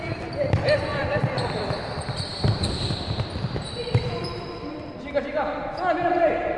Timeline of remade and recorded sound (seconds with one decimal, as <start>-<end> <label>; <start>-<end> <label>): 0.0-0.9 recorded; 0.9-1.4 remade; 1.4-2.3 recorded; 2.3-4.7 remade; 4.7-6.6 recorded